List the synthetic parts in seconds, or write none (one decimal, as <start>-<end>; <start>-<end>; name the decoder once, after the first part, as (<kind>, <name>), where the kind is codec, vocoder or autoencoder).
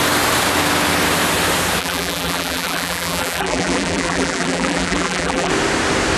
1.8-5.5 (vocoder, BigVGAN v2)